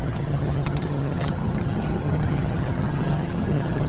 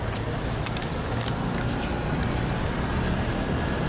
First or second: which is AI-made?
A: first